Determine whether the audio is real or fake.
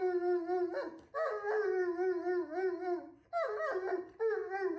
real